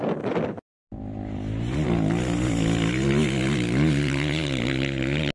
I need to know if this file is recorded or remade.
recorded